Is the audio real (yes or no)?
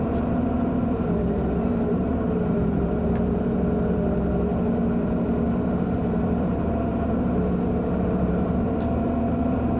no